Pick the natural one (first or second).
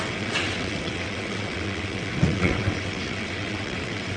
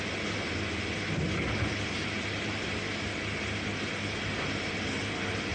second